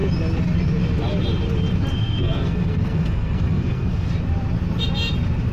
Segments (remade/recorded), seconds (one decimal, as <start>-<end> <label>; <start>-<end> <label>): 0.0-1.9 recorded; 1.9-4.1 remade; 4.1-5.5 recorded